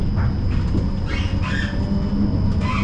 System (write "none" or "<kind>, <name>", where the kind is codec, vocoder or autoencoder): none